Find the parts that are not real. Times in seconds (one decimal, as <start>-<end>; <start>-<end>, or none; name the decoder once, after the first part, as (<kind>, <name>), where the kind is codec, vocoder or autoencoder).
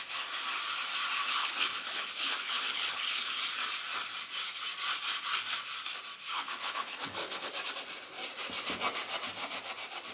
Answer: 1.2-3.4 (codec, HILCodec); 6.3-7.5